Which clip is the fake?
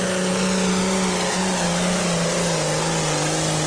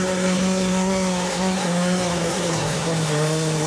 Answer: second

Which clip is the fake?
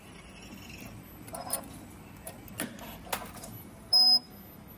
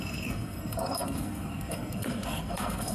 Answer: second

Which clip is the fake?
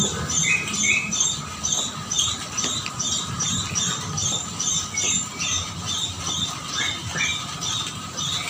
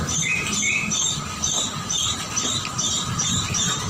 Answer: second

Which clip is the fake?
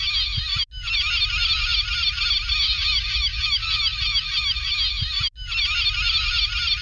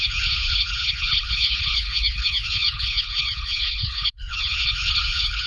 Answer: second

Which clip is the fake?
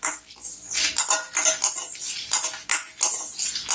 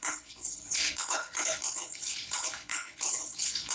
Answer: second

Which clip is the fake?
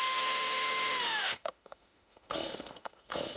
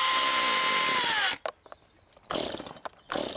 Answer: first